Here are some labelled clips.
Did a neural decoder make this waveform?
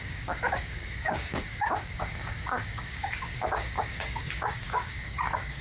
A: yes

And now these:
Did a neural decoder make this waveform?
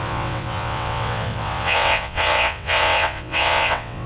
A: yes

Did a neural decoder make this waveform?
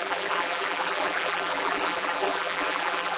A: yes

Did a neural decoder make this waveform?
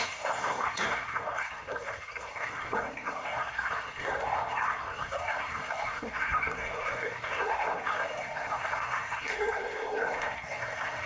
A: yes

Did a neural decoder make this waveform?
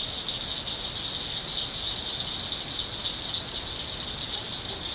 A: no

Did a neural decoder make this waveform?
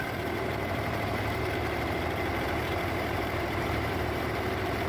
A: yes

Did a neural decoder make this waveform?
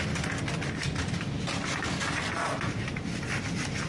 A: no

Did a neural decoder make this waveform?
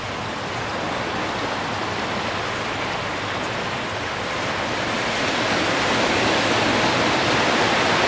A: no